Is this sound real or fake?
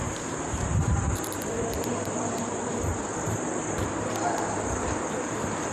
fake